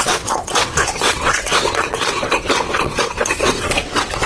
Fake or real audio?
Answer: fake